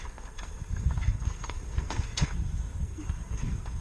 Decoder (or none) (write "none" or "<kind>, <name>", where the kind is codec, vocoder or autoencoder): codec, SNAC